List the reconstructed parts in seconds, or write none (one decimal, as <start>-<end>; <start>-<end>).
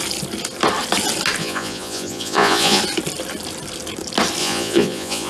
1.4-2.8; 4.4-5.3